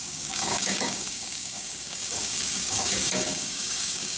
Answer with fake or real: fake